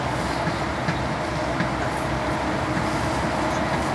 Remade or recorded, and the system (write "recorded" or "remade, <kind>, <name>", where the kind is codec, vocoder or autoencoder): recorded